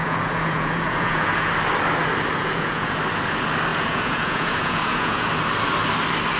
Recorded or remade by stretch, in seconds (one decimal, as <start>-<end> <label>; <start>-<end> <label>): 0.0-1.5 remade; 1.5-2.4 recorded; 2.4-3.0 remade; 3.0-3.7 recorded; 3.7-5.3 remade; 5.3-6.4 recorded